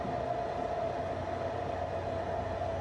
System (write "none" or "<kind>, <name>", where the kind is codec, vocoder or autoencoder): none